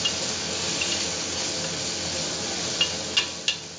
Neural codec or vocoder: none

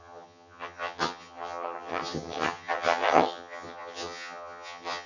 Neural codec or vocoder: vocoder, HiFi-GAN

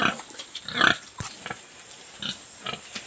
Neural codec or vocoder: none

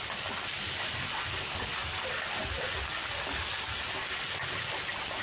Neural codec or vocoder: none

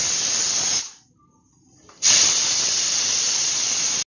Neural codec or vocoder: none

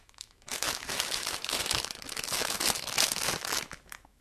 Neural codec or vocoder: autoencoder, DAC-VAE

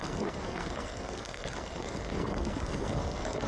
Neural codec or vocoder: codec, SNAC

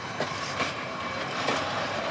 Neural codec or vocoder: vocoder, BigVGAN v2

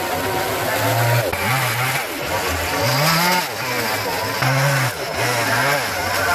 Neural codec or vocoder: none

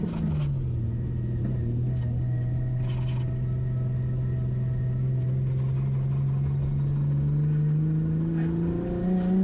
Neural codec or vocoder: none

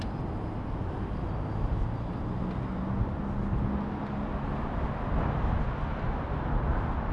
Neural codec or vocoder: none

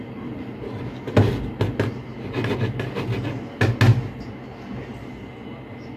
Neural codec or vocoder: none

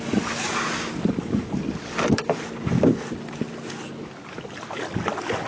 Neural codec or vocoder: none